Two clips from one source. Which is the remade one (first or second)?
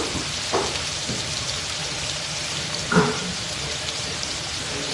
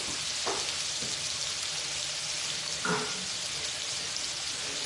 first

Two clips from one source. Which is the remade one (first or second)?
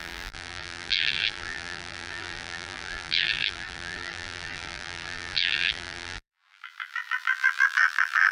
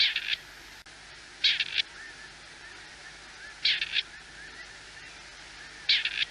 first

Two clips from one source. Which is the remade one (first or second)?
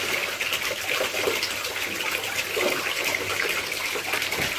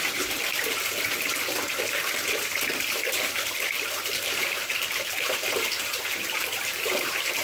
second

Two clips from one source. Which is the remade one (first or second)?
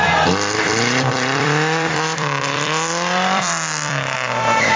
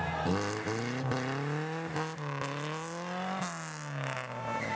first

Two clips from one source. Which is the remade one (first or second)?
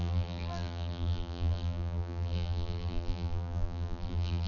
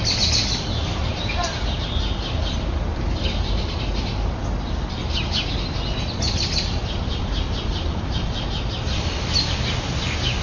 first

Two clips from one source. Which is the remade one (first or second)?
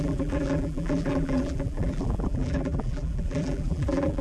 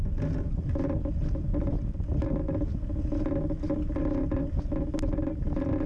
first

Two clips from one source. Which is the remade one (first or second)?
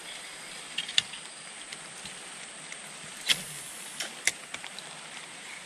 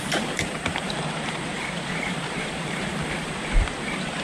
second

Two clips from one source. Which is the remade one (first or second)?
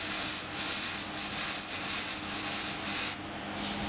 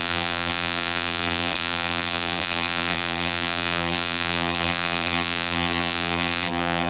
second